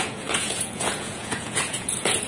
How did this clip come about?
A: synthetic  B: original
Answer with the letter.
A